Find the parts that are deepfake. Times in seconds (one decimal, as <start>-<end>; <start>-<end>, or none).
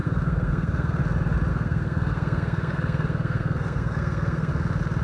0.0-1.0; 1.5-4.5